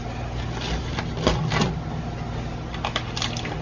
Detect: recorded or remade recorded